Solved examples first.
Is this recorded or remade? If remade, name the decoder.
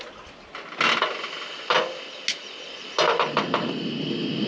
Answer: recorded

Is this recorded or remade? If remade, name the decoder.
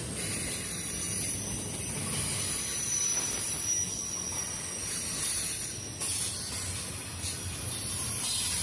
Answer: recorded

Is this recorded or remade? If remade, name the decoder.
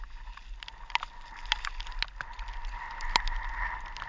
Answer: recorded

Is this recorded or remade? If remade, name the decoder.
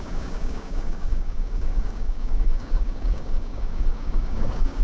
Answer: remade, codec, DAC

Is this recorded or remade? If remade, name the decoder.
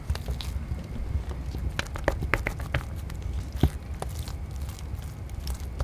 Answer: recorded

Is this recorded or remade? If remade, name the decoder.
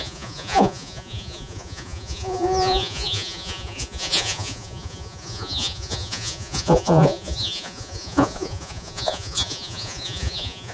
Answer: remade, vocoder, Vocos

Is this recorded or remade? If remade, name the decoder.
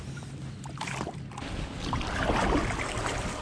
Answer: recorded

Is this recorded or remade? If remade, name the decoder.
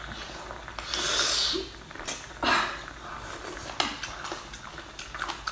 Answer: recorded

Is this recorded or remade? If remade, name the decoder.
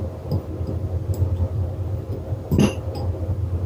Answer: recorded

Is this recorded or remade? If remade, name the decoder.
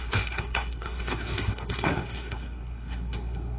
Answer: remade, codec, SNAC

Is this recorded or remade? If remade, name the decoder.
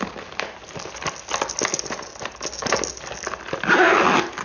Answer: recorded